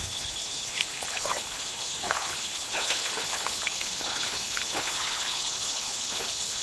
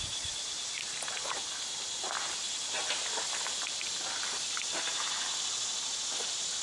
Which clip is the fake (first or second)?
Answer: first